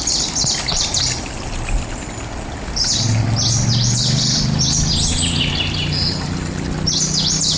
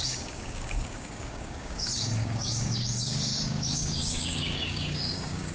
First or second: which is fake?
second